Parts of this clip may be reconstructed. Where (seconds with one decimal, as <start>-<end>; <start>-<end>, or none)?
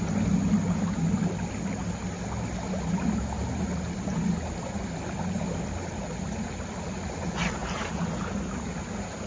none